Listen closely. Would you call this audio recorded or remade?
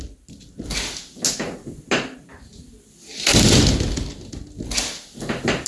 recorded